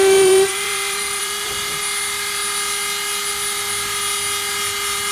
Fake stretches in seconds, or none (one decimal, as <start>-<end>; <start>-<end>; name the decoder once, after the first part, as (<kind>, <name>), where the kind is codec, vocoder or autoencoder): 0.0-1.8 (vocoder, BigVGAN v2)